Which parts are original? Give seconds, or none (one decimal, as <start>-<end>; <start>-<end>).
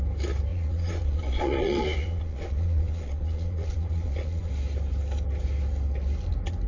0.0-0.5; 4.5-6.7